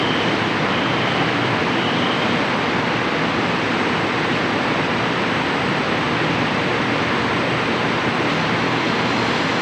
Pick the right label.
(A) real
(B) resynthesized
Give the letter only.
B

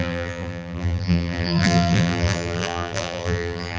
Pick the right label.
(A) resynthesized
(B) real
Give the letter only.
A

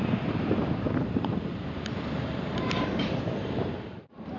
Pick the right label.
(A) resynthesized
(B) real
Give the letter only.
A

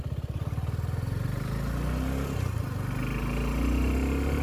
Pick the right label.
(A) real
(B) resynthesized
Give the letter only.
A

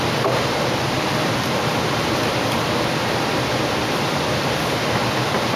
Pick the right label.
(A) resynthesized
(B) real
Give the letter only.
A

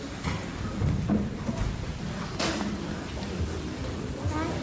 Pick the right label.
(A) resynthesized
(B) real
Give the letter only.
A